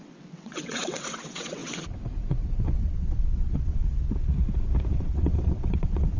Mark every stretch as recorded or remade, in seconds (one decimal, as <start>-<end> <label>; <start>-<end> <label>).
0.0-3.8 remade; 3.8-4.9 recorded; 4.9-6.2 remade